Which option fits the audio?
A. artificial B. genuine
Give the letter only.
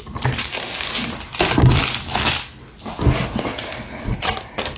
B